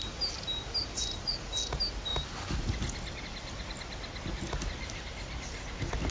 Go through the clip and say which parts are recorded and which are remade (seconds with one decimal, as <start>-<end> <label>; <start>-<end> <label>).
0.0-0.8 recorded; 0.8-1.5 remade; 1.5-6.1 recorded